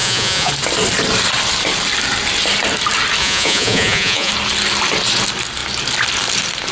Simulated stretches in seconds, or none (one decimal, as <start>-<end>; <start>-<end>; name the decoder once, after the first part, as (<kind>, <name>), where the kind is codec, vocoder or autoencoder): 0.0-0.5 (vocoder, Vocos); 3.2-4.3